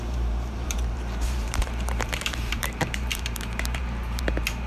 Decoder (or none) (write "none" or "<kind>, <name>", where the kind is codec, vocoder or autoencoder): vocoder, BigVGAN v2